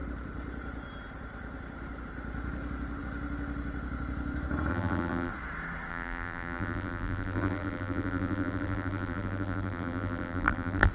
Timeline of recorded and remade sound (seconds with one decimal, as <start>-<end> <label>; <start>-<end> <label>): 0.0-4.7 recorded; 4.7-5.3 remade; 5.3-5.9 recorded; 5.9-10.9 remade